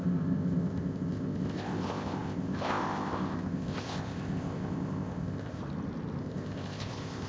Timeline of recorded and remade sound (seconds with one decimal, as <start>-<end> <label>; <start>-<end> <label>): 0.0-5.6 remade; 5.6-6.2 recorded; 6.2-7.3 remade